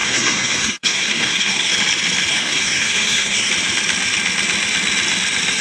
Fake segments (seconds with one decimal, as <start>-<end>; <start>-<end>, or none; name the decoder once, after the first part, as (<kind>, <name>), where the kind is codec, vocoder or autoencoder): 0.0-1.7 (codec, SNAC); 2.3-3.5